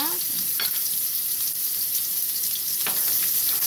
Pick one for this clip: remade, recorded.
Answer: recorded